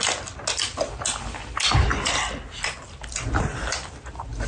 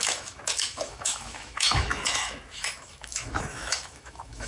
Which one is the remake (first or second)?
second